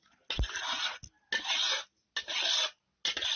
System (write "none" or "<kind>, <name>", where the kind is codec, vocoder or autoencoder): none